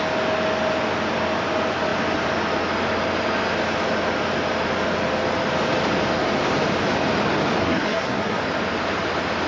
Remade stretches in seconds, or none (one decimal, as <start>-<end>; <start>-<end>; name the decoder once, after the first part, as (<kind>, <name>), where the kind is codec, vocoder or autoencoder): 7.6-8.4 (codec, SNAC)